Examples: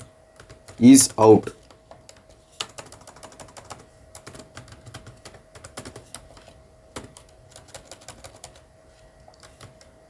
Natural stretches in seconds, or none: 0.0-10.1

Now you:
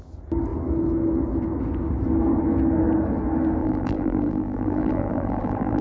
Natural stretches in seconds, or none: 0.0-3.6

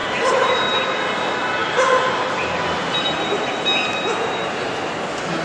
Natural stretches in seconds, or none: 0.6-1.6; 2.4-2.8; 4.7-5.4

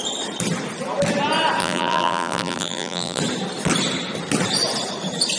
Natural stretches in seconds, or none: 0.0-1.6; 3.2-5.4